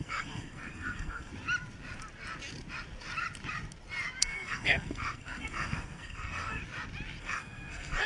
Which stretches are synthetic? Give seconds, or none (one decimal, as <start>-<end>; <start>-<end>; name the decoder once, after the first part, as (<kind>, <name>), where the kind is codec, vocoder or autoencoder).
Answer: 0.0-1.3 (codec, SNAC); 4.2-6.6; 7.2-8.1